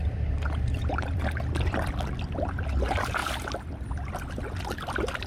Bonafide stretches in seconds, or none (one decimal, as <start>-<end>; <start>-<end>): 0.0-3.2; 3.9-5.3